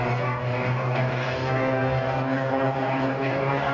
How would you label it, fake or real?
fake